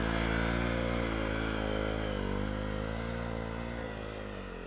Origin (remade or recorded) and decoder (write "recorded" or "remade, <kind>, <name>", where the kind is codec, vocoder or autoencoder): recorded